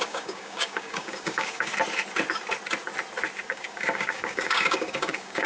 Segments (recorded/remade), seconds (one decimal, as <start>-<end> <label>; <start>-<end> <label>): 0.0-1.7 remade; 1.7-3.5 recorded; 3.5-5.5 remade